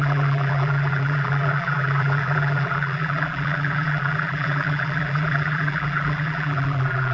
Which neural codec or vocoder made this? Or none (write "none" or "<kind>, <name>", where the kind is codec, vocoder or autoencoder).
vocoder, BigVGAN v2